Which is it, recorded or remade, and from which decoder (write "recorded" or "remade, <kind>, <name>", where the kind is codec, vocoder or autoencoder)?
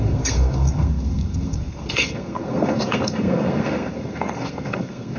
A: remade, codec, SNAC